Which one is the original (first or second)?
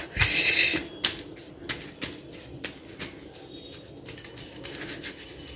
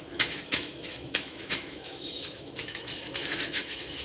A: first